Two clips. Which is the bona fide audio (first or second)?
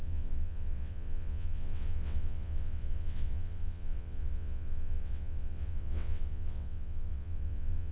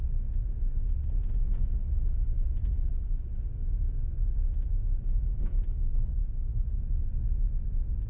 second